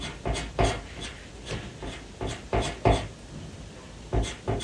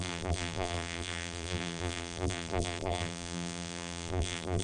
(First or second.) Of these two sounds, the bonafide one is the first